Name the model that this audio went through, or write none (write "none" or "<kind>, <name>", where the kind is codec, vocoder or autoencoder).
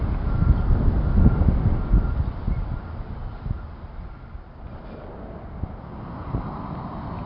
none